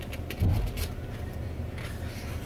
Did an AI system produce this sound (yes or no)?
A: yes